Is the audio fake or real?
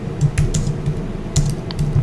real